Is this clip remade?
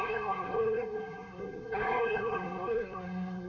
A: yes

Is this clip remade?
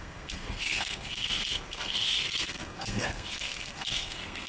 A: yes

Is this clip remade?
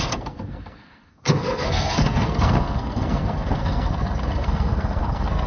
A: yes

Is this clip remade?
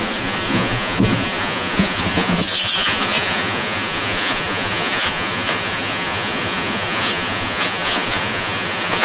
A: yes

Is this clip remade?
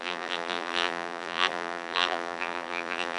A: yes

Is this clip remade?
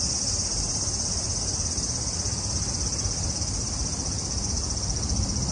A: no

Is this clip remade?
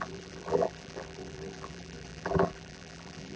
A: yes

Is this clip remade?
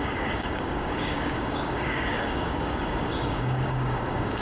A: yes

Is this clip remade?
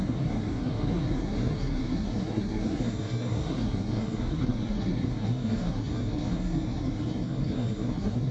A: yes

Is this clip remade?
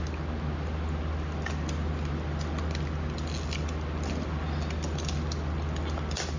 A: no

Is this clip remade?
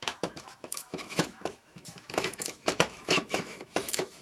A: yes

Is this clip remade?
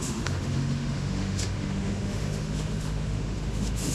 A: yes